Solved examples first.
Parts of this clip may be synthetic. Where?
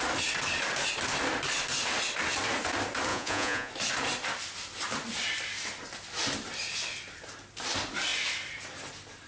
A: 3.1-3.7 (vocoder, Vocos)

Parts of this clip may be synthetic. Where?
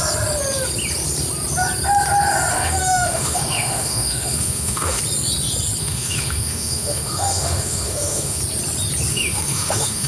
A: 2.5-5.0 (autoencoder, DAC-VAE); 5.8-8.4; 9.1-10.1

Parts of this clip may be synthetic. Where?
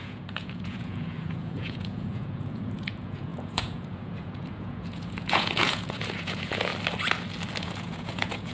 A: 0.0-6.7 (vocoder, Vocos); 7.6-8.5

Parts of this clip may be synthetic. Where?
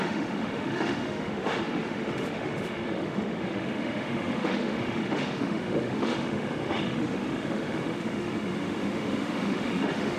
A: 0.0-10.2 (autoencoder, DAC-VAE)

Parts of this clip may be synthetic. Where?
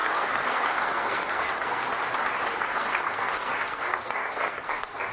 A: 0.0-1.9 (codec, SNAC); 2.5-5.1